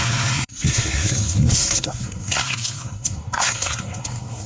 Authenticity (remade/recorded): remade